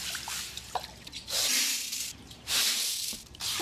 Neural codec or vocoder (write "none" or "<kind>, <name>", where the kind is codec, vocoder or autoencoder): vocoder, BigVGAN v2